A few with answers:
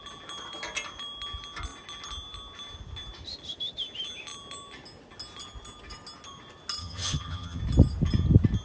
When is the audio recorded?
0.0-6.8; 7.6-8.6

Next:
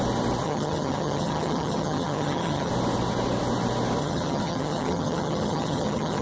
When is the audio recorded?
0.0-0.4; 2.7-4.0

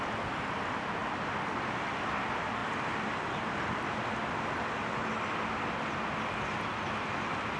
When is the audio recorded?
0.0-7.6

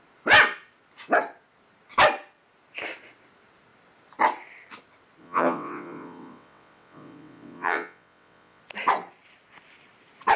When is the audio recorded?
0.0-5.2; 8.6-10.4

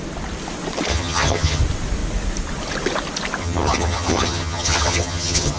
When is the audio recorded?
0.0-0.9; 1.6-3.4